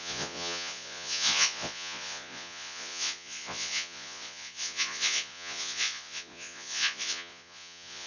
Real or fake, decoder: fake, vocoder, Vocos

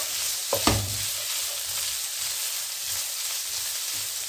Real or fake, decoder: real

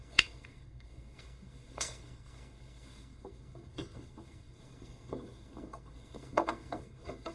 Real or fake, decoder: fake, codec, SNAC